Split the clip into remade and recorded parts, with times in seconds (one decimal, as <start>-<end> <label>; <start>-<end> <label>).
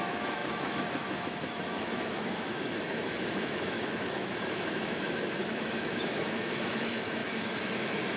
0.0-8.2 remade